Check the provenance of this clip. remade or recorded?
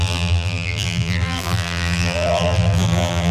remade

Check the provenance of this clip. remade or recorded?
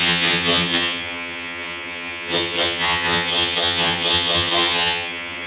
remade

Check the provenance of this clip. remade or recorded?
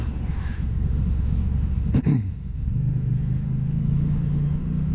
remade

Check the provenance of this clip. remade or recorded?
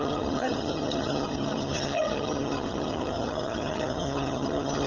remade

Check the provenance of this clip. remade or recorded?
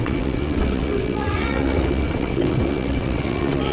remade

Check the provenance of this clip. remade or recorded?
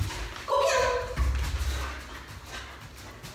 recorded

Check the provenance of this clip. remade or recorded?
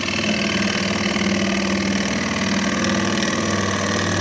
recorded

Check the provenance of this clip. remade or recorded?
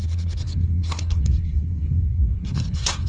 remade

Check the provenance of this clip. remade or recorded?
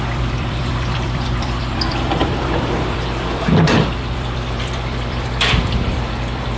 remade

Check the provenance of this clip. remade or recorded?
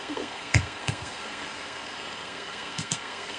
remade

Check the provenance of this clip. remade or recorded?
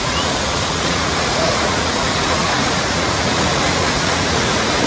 remade